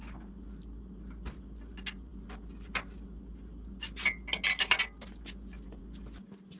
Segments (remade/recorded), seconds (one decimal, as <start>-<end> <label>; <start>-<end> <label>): 0.0-6.6 recorded